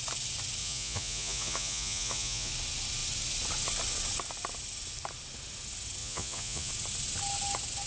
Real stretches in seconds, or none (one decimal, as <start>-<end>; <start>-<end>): 0.0-0.6; 2.5-6.0; 6.7-7.9